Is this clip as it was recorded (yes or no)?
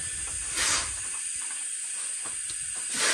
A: yes